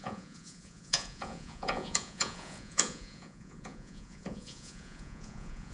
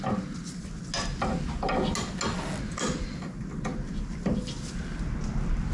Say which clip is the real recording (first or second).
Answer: second